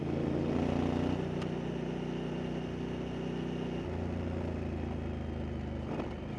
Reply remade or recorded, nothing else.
recorded